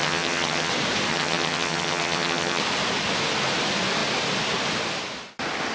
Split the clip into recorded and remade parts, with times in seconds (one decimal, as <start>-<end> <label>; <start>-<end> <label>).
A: 0.0-0.7 remade; 0.7-1.1 recorded; 1.1-2.6 remade; 2.6-5.7 recorded